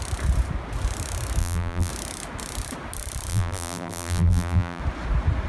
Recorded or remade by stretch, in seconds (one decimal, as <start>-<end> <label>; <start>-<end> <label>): 0.0-1.4 recorded; 1.4-1.9 remade; 1.9-3.3 recorded; 3.3-4.8 remade; 4.8-5.5 recorded